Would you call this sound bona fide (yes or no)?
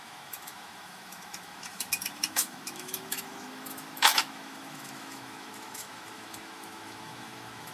no